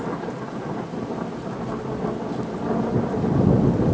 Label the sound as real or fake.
real